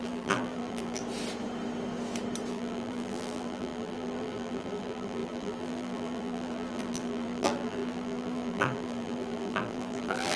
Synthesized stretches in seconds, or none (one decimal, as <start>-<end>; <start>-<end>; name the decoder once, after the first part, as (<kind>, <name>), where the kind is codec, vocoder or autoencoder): 0.0-1.0 (vocoder, BigVGAN v2); 2.5-10.4